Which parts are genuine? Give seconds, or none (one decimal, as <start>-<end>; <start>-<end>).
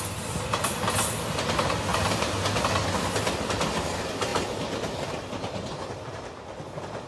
0.0-1.9; 2.6-7.1